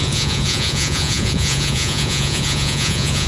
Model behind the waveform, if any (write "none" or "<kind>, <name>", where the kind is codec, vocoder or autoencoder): vocoder, Vocos